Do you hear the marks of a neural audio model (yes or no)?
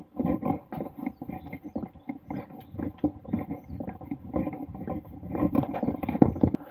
no